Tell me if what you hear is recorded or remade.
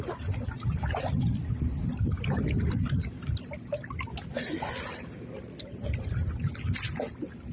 recorded